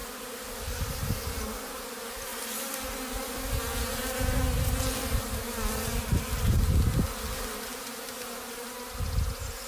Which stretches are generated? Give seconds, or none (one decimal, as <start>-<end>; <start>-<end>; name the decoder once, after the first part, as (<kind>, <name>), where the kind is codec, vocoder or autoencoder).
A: none